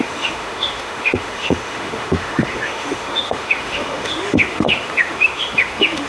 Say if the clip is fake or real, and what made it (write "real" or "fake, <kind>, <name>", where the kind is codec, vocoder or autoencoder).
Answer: fake, autoencoder, DAC-VAE